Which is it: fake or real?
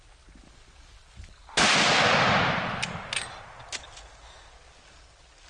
real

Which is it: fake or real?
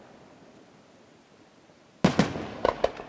real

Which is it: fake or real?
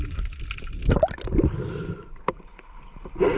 real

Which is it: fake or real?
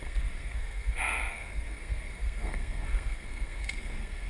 fake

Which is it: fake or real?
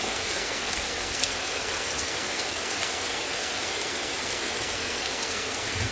fake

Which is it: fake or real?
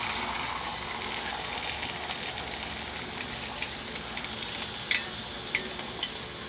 real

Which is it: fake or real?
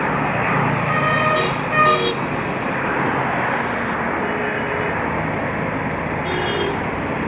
real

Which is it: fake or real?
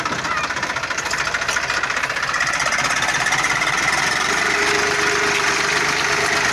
real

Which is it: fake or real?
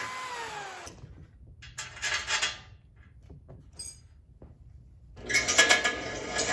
real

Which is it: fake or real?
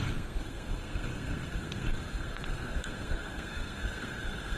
fake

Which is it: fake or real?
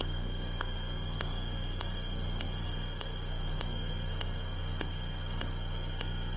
fake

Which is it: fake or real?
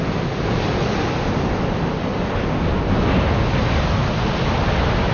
real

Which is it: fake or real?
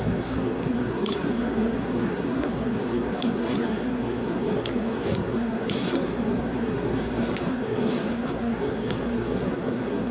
fake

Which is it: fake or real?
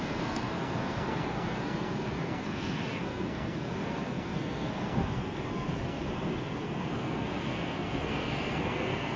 fake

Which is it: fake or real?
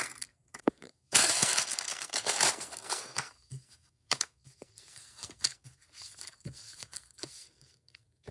fake